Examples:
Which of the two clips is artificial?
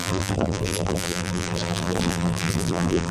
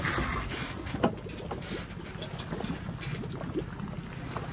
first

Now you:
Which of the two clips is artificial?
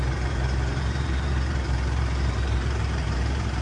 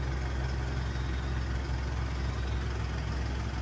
first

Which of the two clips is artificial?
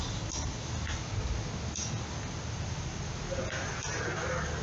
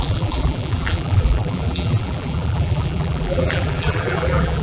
second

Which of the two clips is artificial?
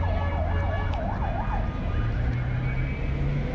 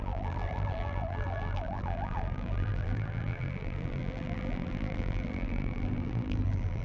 second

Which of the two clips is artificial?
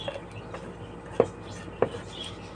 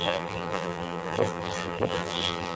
second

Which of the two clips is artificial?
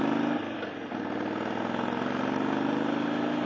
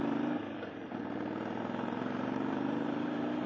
second